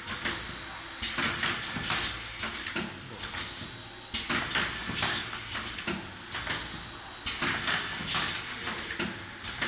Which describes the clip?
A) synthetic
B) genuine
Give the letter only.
B